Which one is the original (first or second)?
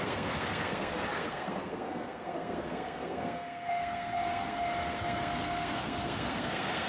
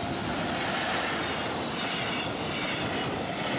second